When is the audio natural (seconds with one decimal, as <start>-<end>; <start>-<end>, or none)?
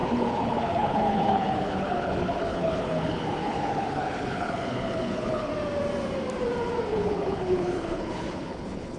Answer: 5.5-6.9